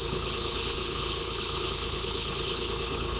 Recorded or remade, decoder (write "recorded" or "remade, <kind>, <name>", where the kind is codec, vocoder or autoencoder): remade, codec, HILCodec